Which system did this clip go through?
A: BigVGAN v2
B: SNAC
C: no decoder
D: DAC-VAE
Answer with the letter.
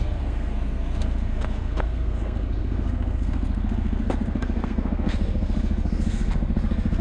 B